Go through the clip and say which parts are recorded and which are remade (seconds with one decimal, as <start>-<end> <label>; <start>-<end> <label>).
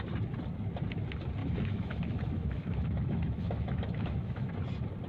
0.0-1.4 recorded; 1.4-4.5 remade; 4.5-5.1 recorded